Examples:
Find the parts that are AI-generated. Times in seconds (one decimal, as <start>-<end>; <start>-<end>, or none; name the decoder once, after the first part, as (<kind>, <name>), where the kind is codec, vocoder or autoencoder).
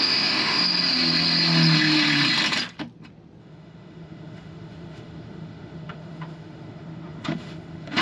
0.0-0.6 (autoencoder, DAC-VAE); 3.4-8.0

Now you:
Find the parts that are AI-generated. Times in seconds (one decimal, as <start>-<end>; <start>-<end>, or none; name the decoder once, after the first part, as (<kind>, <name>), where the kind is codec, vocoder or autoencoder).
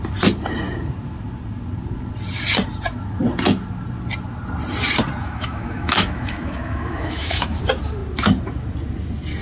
5.2-7.6 (autoencoder, DAC-VAE)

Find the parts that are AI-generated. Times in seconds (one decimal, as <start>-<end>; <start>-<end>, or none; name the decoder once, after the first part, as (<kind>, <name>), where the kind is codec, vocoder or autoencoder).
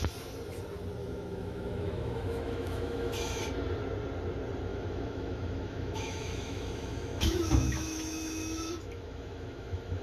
1.0-3.4 (autoencoder, DAC-VAE); 4.7-10.0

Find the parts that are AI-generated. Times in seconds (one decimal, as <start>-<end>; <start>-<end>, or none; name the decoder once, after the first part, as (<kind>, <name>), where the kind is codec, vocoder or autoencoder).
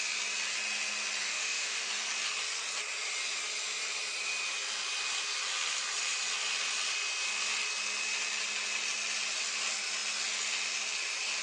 1.2-1.9 (autoencoder, DAC-VAE)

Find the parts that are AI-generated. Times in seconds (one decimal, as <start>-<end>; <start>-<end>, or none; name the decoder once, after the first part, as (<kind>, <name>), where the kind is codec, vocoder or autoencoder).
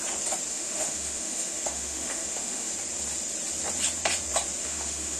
0.5-2.7 (autoencoder, DAC-VAE); 4.6-5.2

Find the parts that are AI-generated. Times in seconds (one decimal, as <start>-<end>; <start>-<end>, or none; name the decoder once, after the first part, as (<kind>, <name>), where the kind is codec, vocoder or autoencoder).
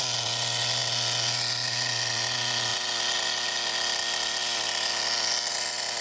none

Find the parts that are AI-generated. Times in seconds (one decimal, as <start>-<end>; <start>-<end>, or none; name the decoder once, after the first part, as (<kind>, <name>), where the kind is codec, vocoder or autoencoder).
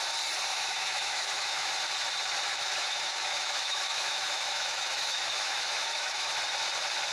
0.5-1.7 (autoencoder, DAC-VAE); 2.5-6.3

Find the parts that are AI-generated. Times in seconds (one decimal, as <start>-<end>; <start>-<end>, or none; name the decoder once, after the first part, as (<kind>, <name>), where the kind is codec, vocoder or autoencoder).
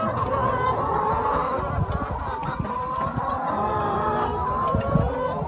none